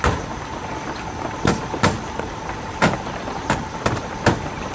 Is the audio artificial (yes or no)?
no